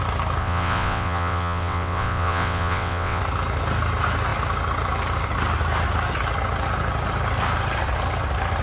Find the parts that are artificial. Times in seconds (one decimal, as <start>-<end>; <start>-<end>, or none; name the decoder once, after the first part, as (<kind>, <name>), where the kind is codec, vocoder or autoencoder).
0.4-3.2 (vocoder, WaveNeXt)